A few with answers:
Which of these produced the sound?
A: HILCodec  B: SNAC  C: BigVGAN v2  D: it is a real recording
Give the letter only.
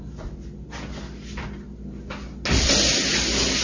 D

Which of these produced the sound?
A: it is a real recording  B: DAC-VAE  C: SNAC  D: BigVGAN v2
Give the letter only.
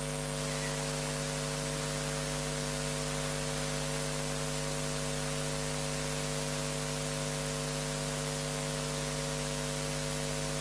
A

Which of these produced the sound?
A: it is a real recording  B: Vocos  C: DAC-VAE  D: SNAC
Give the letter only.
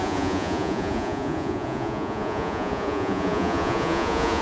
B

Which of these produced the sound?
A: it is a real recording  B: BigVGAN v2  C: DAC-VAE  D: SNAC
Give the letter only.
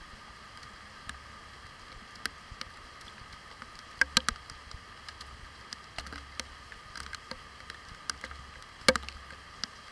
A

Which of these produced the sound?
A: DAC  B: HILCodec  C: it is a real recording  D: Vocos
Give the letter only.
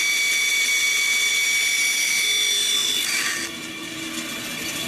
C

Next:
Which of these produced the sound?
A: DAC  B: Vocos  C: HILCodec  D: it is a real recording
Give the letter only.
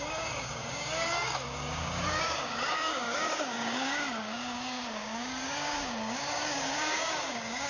A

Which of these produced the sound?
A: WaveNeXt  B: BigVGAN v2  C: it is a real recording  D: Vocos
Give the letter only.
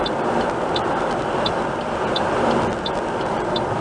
B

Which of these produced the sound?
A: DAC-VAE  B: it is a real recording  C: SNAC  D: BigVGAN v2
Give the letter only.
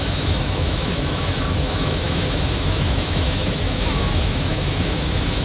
A